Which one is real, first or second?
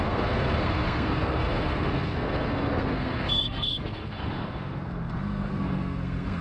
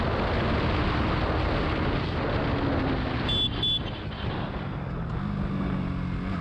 second